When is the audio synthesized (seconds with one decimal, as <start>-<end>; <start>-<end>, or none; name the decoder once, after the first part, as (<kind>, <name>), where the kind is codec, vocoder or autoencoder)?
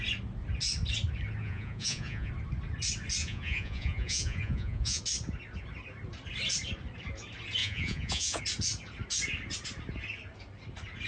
1.4-2.3 (vocoder, Vocos); 3.2-5.0; 7.6-8.4